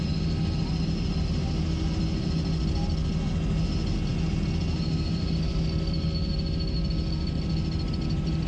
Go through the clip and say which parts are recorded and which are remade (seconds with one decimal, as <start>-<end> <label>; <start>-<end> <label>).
0.0-8.5 recorded

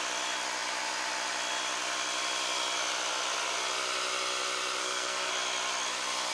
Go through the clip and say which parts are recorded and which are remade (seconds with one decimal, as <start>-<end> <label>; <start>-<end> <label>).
0.0-4.8 recorded; 4.8-5.3 remade; 5.3-6.3 recorded